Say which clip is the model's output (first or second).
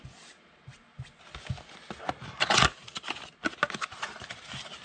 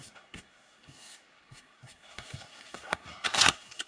second